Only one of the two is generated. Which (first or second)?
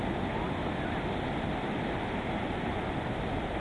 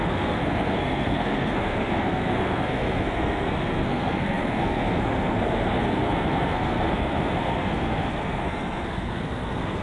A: second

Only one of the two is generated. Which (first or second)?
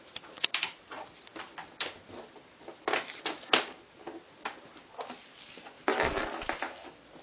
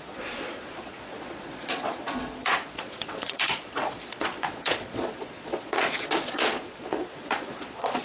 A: second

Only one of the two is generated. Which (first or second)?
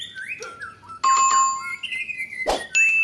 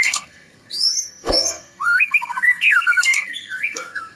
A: second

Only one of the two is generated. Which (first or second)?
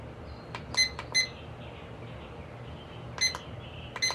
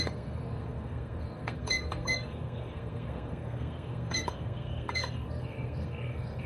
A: second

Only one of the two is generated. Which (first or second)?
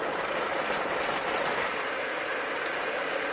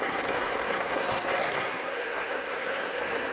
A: second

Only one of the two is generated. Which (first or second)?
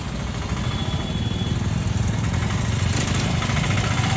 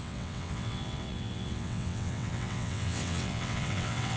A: second